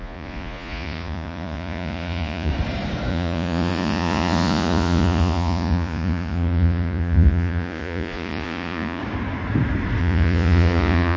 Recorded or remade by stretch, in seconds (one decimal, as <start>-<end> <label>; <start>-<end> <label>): 0.0-2.5 remade; 2.5-3.1 recorded; 3.1-9.0 remade; 9.0-10.0 recorded; 10.0-11.2 remade